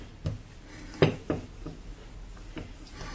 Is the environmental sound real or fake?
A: real